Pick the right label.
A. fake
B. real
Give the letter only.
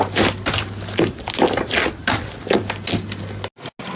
B